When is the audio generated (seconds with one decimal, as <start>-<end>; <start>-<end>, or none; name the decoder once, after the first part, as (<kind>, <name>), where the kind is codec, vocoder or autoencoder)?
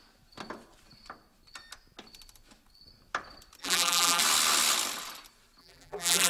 3.6-4.2 (vocoder, BigVGAN v2); 5.6-6.3